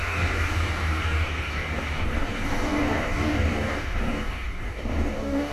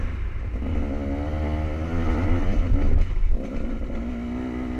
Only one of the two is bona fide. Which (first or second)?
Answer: second